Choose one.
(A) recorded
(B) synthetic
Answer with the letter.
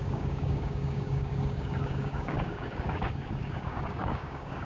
B